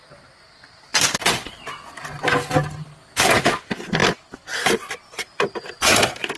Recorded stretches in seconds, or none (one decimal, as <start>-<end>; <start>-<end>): 0.0-6.4